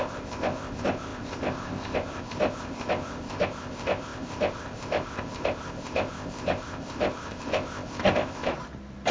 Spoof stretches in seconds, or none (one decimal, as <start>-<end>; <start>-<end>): 0.0-8.5